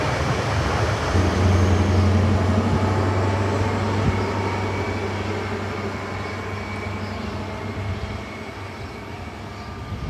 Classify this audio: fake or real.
real